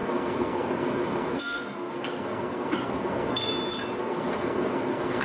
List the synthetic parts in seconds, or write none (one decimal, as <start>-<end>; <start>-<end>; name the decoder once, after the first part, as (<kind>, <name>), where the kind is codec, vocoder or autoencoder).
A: 0.0-3.5 (codec, SNAC); 4.0-5.2

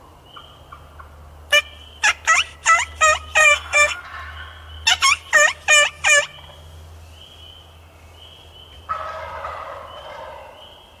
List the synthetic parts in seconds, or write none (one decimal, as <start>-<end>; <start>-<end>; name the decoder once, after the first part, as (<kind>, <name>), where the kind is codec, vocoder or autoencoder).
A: 3.4-4.0 (codec, SNAC)